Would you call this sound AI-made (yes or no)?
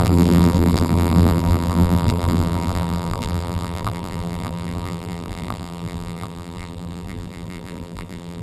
yes